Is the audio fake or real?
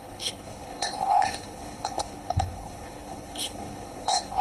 fake